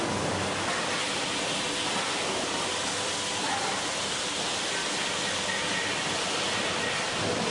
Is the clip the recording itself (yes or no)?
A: yes